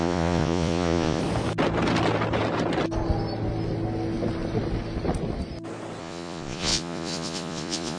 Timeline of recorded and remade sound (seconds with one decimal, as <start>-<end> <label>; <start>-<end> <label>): 0.0-1.2 remade; 1.2-6.0 recorded; 6.0-8.0 remade